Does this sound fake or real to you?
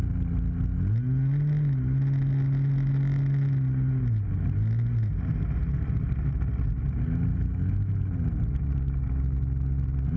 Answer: real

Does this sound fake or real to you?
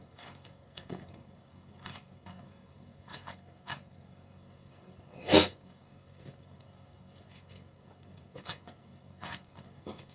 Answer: fake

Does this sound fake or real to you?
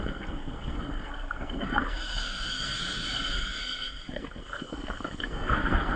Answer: fake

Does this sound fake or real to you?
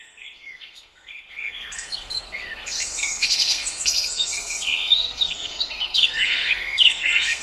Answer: fake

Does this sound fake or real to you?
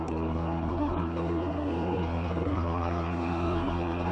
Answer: fake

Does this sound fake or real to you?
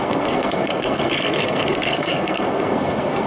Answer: fake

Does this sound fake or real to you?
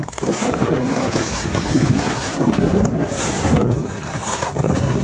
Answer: fake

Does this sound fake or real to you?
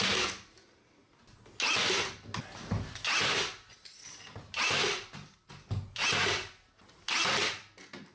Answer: real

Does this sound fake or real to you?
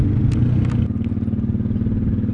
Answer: real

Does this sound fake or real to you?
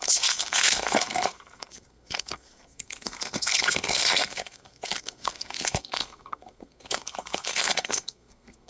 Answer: fake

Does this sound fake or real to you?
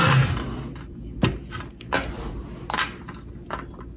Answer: real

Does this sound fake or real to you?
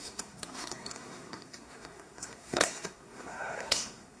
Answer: fake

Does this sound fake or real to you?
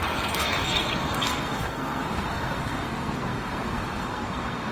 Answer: fake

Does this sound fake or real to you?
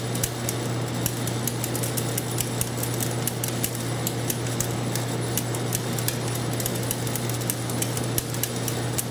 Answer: real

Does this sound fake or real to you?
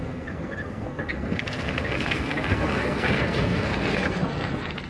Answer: fake